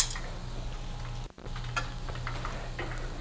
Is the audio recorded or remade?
recorded